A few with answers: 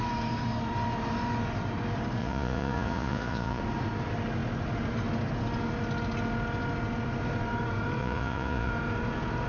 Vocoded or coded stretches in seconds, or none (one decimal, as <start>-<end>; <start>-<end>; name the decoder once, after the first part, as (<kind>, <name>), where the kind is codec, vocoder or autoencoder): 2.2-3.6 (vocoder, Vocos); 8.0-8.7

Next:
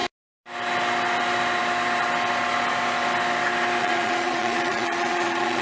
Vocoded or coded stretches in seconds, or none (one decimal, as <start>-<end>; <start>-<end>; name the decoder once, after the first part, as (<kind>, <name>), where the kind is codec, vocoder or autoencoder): 3.8-5.6 (vocoder, Vocos)

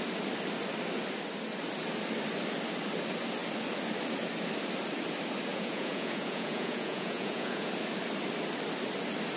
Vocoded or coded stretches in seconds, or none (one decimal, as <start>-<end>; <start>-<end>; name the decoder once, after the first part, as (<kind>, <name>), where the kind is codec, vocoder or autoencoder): 5.5-7.7 (vocoder, Vocos)

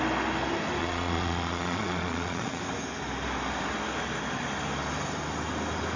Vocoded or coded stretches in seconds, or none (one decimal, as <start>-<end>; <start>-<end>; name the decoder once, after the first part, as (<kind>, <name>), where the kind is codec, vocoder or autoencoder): 0.8-2.6 (vocoder, Vocos)

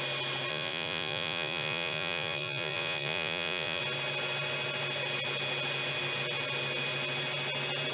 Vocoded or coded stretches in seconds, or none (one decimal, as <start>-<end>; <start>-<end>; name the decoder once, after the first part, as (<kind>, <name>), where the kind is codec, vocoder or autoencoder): 0.5-3.8 (vocoder, Vocos)

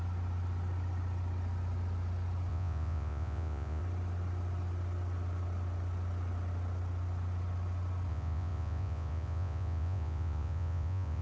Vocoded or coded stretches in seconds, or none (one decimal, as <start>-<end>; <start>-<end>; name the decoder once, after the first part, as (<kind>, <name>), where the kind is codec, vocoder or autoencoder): 2.5-3.8 (vocoder, Vocos); 8.1-11.2